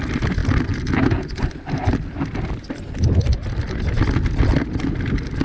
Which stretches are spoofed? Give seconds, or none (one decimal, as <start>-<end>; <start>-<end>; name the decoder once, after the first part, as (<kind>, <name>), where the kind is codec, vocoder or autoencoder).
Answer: none